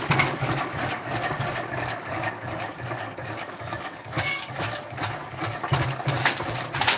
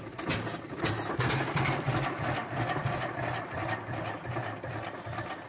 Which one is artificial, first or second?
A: first